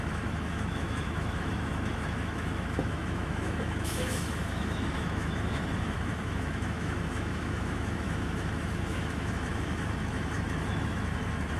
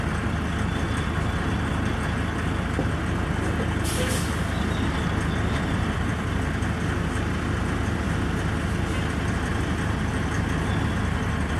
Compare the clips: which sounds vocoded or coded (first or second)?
first